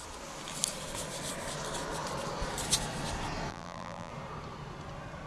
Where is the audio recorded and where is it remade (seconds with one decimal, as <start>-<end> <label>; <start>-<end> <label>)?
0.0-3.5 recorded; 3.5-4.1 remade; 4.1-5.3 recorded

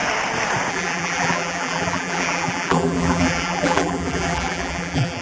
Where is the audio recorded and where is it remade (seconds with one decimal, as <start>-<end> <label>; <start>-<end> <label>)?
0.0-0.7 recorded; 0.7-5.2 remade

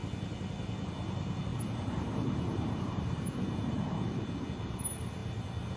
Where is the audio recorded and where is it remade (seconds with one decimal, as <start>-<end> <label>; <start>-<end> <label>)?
0.0-1.5 recorded; 1.5-3.8 remade; 3.8-5.8 recorded

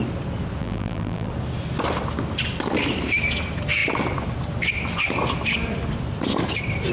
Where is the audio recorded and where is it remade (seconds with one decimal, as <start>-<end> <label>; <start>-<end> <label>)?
0.0-0.6 recorded; 0.6-1.3 remade; 1.3-6.9 recorded

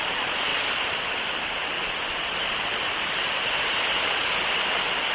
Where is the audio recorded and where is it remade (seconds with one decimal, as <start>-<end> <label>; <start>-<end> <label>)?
0.0-4.2 remade; 4.2-5.1 recorded